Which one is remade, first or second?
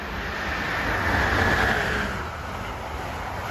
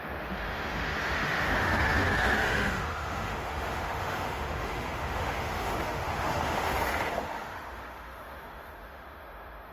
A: second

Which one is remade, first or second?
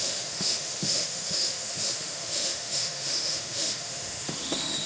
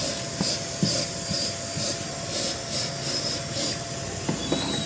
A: first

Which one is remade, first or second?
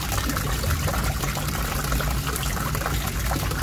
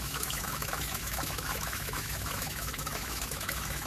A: second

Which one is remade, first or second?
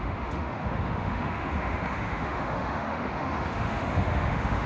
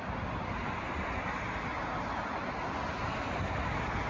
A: first